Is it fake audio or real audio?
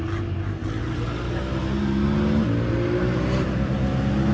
real